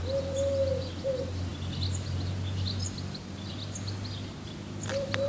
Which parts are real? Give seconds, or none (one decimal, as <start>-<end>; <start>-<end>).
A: 0.0-5.3